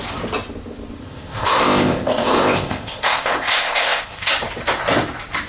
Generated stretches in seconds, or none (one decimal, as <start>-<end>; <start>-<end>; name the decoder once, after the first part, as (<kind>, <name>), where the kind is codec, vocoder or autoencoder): 1.0-4.3 (codec, ZipCodec)